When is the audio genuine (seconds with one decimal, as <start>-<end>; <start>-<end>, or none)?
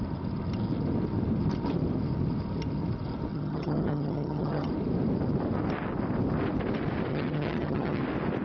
0.0-3.3; 4.7-7.1; 8.0-8.4